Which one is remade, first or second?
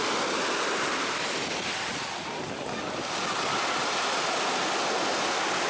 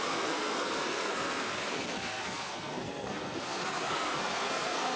second